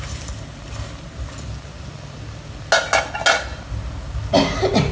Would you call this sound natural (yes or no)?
yes